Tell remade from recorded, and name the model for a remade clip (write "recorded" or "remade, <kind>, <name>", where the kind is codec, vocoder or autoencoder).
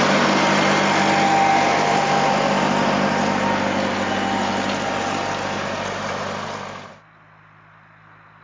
recorded